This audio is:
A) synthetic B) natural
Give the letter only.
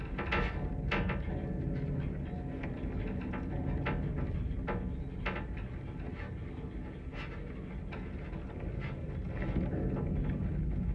B